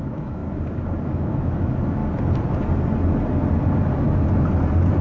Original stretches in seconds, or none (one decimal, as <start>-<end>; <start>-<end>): 0.4-1.0; 2.0-5.0